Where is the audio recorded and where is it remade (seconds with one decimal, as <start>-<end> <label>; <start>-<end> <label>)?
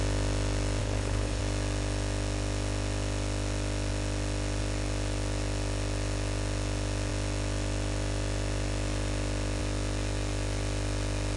0.0-0.8 recorded; 0.8-1.4 remade; 1.4-11.4 recorded